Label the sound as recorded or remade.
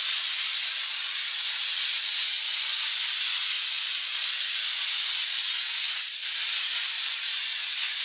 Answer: recorded